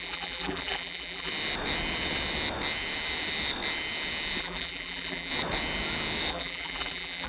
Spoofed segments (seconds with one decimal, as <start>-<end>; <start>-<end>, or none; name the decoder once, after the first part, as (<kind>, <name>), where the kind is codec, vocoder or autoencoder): 0.0-1.3 (vocoder, BigVGAN v2); 4.4-5.3; 6.3-7.3